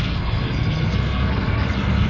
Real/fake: fake